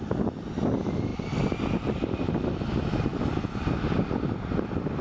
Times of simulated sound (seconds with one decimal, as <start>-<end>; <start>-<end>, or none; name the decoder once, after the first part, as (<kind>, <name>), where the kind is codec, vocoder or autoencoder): none